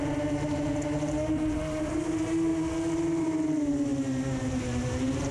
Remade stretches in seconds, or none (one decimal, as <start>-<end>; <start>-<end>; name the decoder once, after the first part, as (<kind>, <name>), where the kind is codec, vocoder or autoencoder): 0.0-2.5 (vocoder, BigVGAN v2); 3.2-5.3